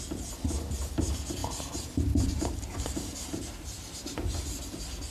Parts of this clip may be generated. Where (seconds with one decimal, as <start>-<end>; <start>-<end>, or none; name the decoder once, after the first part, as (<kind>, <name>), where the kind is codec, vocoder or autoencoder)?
1.4-4.5 (vocoder, BigVGAN v2)